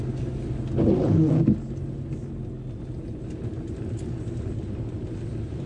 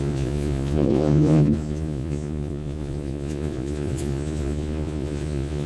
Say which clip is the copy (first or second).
second